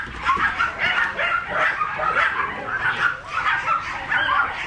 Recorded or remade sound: remade